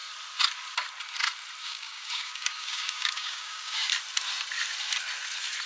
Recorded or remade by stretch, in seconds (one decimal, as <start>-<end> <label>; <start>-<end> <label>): 0.0-1.6 recorded; 1.6-3.9 remade; 3.9-5.7 recorded